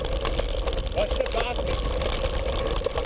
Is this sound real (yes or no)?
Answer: yes